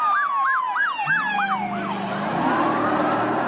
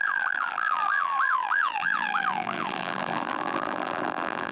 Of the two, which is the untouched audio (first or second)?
first